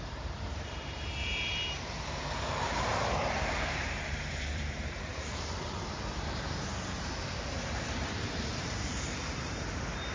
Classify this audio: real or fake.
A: fake